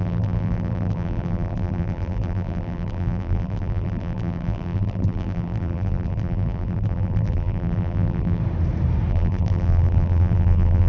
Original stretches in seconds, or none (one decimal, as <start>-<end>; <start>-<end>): 8.4-9.1